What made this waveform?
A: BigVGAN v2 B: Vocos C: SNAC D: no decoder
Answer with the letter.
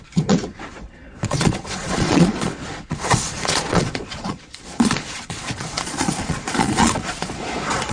B